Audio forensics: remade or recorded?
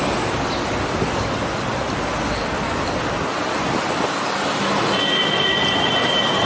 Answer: recorded